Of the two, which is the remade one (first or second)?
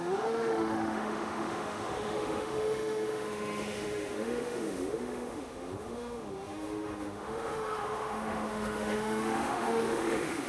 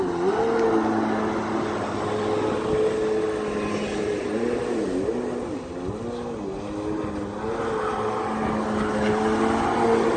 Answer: first